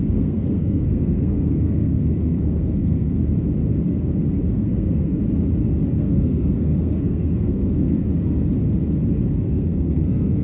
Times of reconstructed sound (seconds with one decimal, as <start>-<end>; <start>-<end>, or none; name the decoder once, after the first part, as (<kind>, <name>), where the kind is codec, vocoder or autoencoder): 0.0-3.2 (codec, SNAC); 4.5-5.2; 6.0-8.0; 9.3-10.4